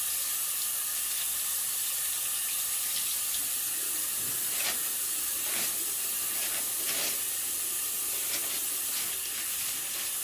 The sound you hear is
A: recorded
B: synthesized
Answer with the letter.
A